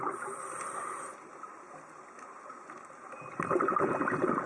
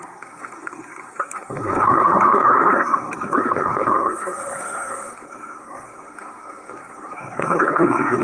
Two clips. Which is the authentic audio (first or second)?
first